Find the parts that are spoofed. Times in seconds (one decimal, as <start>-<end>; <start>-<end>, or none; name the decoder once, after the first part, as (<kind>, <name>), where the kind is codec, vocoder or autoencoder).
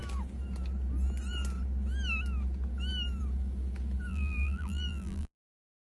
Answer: 4.1-5.9 (vocoder, BigVGAN v2)